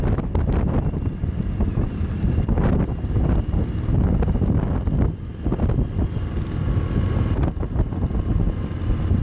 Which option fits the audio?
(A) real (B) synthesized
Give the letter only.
A